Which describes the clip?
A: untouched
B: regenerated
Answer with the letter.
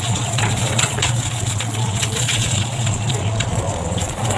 B